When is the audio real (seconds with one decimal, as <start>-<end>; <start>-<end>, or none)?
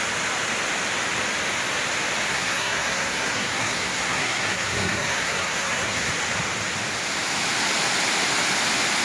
0.0-2.3; 6.1-9.0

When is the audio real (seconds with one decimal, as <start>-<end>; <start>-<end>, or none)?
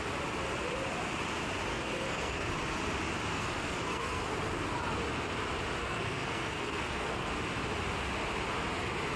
0.0-1.7; 2.5-3.3; 4.3-5.8; 7.3-9.2